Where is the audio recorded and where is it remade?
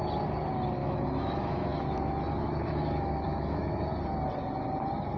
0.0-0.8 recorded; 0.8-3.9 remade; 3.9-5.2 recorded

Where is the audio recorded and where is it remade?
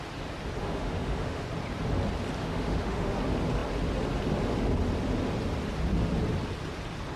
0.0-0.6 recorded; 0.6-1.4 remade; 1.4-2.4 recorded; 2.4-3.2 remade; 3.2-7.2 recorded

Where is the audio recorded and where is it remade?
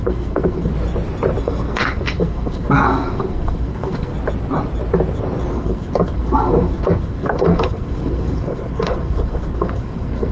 0.0-0.7 remade; 0.7-1.4 recorded; 1.4-4.1 remade; 4.1-5.5 recorded; 5.5-10.3 remade